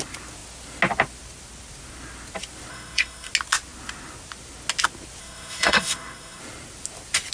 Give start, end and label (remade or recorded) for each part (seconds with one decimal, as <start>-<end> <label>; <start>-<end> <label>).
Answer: 0.0-2.7 recorded; 2.7-3.3 remade; 3.3-5.2 recorded; 5.2-6.4 remade; 6.4-7.3 recorded